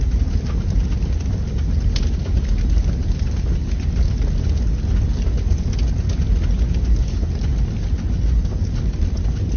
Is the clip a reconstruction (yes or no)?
no